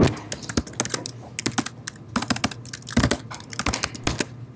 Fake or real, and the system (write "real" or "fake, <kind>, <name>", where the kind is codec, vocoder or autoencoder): real